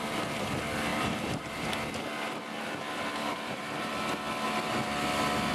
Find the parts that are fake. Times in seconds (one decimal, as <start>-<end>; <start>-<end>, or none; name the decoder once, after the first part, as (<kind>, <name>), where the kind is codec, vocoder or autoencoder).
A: 0.9-1.7 (vocoder, BigVGAN v2); 3.3-3.9